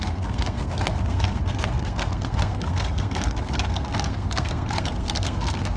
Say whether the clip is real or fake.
fake